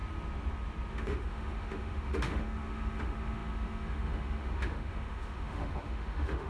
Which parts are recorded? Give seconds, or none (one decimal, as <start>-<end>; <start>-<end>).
0.0-0.9